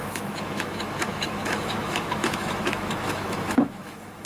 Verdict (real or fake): fake